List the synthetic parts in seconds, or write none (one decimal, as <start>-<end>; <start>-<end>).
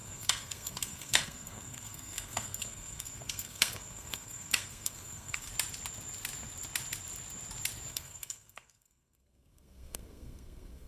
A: 0.0-5.5; 7.9-10.9